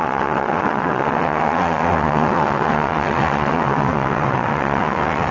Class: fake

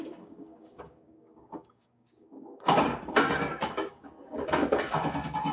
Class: fake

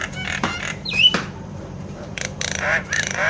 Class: fake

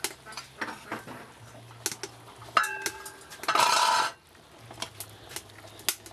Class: real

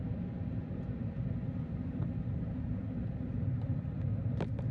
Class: real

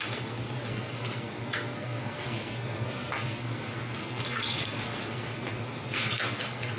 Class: fake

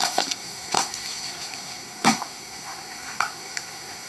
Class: fake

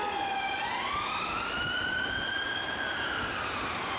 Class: real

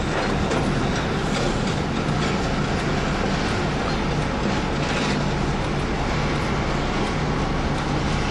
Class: real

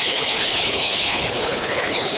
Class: fake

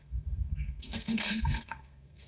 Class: fake